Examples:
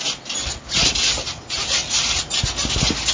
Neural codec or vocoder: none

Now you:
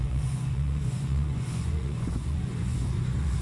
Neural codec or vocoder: vocoder, Vocos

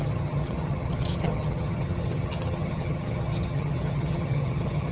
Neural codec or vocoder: vocoder, HiFi-GAN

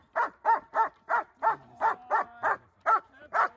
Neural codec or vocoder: vocoder, BigVGAN v2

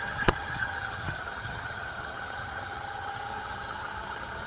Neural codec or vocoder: vocoder, HiFi-GAN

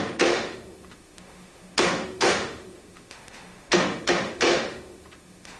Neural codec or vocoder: autoencoder, DAC-VAE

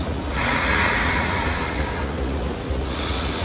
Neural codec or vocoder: vocoder, Vocos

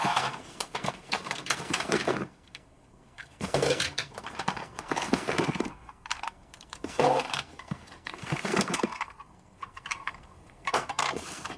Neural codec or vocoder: codec, SNAC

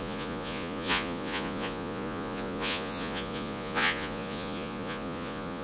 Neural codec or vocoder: vocoder, Vocos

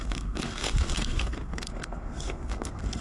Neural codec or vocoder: codec, SNAC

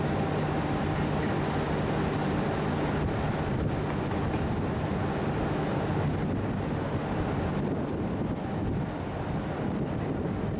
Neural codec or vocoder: none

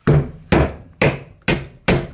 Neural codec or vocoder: none